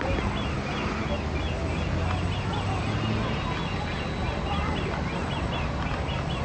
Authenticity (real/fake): real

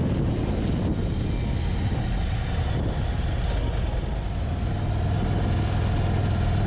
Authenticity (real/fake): real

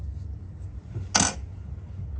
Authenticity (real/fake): real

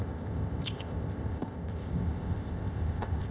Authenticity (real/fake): fake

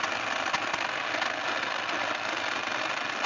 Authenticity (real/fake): real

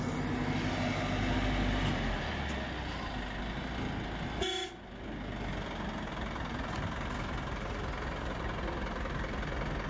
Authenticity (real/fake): real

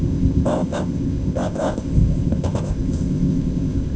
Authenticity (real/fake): fake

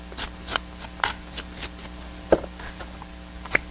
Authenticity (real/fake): real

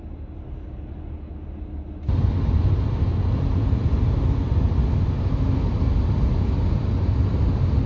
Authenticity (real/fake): real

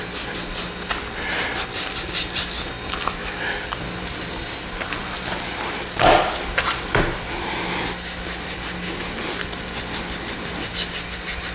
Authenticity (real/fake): real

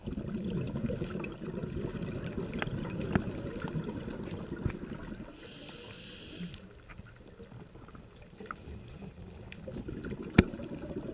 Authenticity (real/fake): real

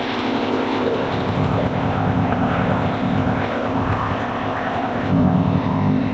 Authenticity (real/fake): fake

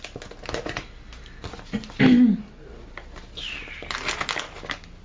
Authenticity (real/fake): real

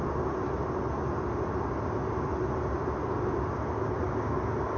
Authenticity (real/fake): real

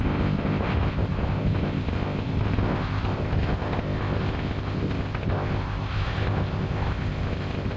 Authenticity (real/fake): fake